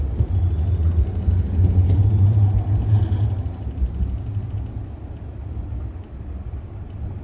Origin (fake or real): real